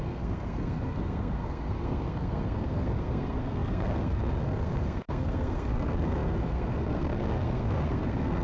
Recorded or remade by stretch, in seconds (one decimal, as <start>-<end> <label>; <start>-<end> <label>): 0.0-8.4 remade